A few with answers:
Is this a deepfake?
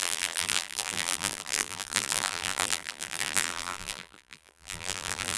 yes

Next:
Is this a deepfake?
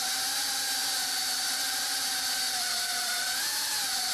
yes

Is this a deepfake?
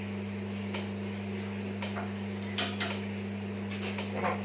no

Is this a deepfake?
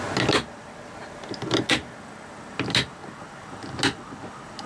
no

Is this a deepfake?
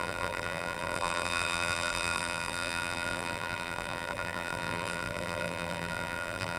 yes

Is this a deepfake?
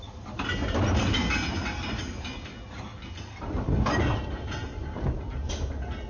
no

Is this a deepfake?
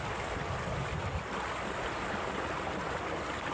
yes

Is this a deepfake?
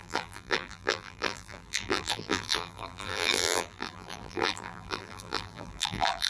yes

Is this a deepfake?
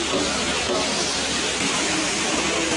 no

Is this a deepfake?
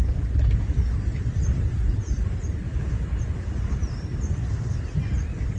no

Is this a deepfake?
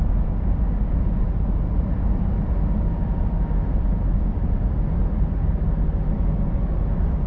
no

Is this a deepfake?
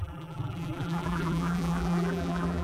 yes